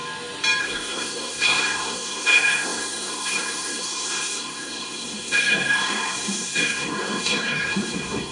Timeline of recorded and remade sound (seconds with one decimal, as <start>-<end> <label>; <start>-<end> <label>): 0.0-0.6 recorded; 0.6-8.3 remade